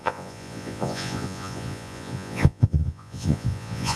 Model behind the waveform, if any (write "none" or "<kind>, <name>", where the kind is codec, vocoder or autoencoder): vocoder, Vocos